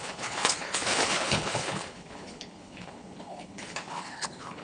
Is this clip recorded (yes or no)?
no